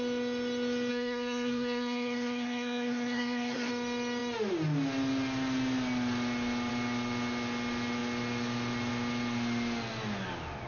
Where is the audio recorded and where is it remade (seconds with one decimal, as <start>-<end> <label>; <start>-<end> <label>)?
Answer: 0.0-0.9 recorded; 0.9-3.7 remade; 3.7-10.7 recorded